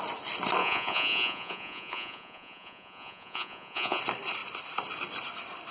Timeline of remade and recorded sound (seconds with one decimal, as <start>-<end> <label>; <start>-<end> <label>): 0.0-0.6 recorded; 0.6-4.0 remade; 4.0-5.7 recorded